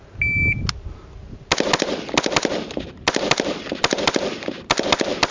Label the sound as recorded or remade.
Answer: recorded